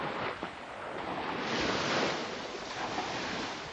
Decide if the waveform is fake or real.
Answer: real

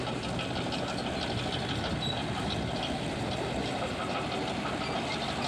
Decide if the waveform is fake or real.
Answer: real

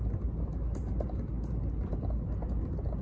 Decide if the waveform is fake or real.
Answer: real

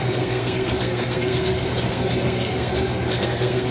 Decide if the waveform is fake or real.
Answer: fake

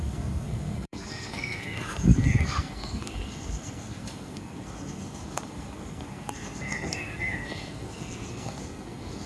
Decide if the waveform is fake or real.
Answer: fake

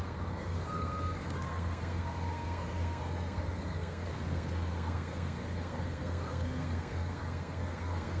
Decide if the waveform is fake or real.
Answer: fake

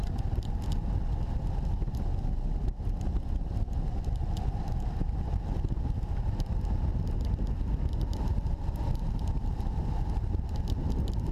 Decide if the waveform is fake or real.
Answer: real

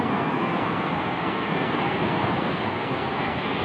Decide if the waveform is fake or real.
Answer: fake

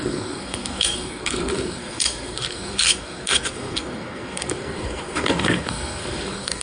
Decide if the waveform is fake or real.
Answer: fake